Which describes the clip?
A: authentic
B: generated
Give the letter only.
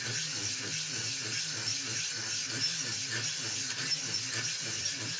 A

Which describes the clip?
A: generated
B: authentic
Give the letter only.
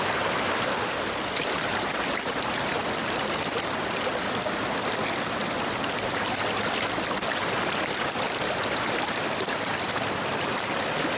A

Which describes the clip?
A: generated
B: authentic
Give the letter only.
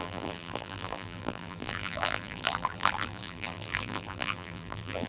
A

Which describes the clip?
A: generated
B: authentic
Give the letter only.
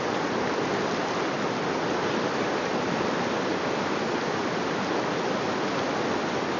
B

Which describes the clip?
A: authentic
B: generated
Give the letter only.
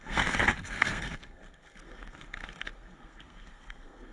B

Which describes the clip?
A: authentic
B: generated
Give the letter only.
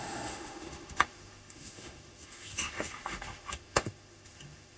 B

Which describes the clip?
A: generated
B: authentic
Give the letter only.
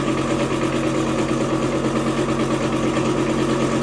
B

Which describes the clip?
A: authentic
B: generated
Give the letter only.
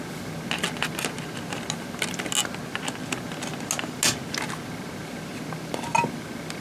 A